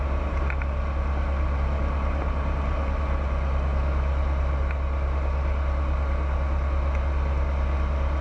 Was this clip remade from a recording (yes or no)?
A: no